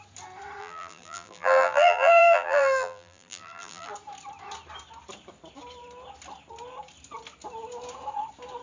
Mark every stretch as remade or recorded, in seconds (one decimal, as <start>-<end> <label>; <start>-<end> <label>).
0.0-0.6 recorded; 0.6-3.9 remade; 3.9-8.6 recorded